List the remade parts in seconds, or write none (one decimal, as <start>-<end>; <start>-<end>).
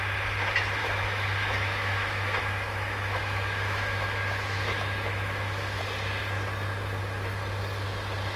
0.8-5.8